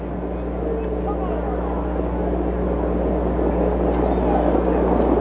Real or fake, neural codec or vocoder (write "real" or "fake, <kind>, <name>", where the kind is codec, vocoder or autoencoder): real